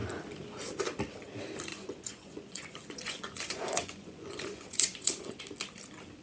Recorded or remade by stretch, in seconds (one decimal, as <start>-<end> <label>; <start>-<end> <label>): 0.0-1.7 recorded; 1.7-5.4 remade; 5.4-6.2 recorded